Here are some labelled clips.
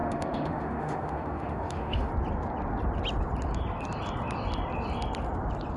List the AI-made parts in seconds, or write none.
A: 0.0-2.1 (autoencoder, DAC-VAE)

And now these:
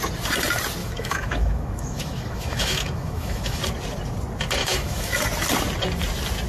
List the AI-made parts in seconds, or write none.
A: 0.8-3.6 (autoencoder, DAC-VAE); 4.6-5.1

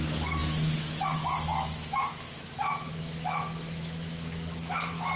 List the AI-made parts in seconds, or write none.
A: 0.0-5.2 (autoencoder, DAC-VAE)

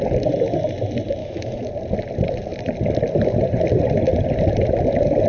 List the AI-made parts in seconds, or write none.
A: 1.2-1.7 (autoencoder, DAC-VAE)

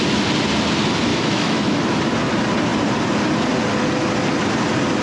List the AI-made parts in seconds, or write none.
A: 1.1-2.0 (autoencoder, DAC-VAE)

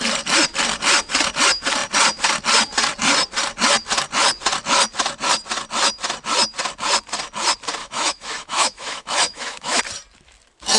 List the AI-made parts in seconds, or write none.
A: 7.8-9.8 (autoencoder, DAC-VAE)

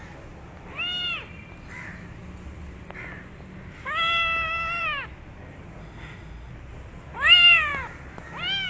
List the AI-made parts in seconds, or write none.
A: 5.8-6.5 (autoencoder, DAC-VAE)

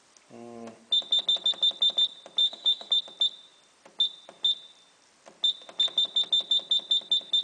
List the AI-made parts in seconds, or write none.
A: 2.4-2.9 (autoencoder, DAC-VAE)